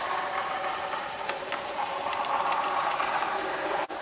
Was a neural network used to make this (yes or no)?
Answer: yes